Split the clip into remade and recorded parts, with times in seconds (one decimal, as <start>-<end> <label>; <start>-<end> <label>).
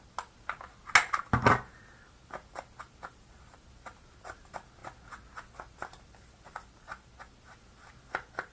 0.0-8.5 recorded